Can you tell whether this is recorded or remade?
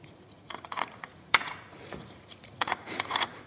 remade